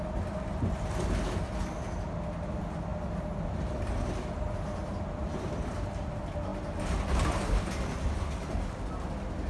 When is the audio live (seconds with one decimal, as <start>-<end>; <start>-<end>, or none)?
0.0-9.5